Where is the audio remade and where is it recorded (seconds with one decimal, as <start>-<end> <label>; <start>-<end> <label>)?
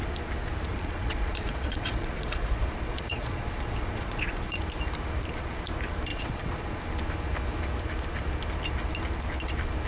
0.0-0.7 recorded; 0.7-4.6 remade; 4.6-6.1 recorded; 6.1-6.8 remade; 6.8-9.9 recorded